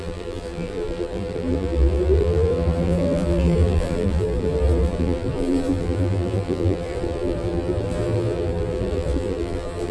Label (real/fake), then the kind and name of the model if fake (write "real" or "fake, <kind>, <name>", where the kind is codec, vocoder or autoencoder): fake, vocoder, BigVGAN v2